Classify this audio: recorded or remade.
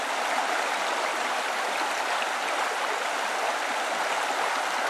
recorded